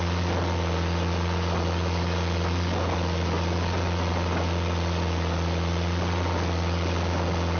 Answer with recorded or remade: recorded